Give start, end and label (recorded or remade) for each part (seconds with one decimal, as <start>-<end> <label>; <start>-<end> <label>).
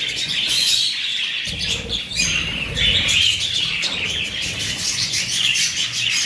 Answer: 0.0-1.1 remade; 1.1-4.7 recorded; 4.7-6.3 remade